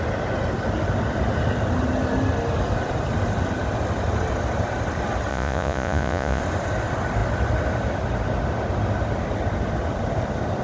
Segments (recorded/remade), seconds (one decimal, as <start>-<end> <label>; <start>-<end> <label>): 0.0-5.3 recorded; 5.3-6.4 remade; 6.4-10.6 recorded